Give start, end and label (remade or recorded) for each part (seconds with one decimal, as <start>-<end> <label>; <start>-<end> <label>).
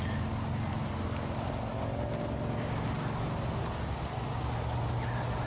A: 0.0-5.5 recorded